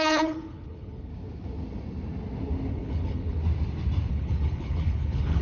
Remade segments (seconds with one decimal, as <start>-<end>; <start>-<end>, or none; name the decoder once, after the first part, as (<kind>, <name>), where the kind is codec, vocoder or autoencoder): 0.0-1.1 (codec, HILCodec); 2.7-3.4; 4.1-5.4